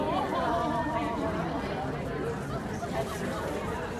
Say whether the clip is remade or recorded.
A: recorded